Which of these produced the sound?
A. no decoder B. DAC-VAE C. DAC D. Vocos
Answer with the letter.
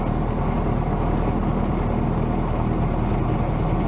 A